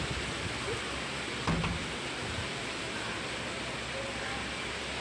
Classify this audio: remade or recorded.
recorded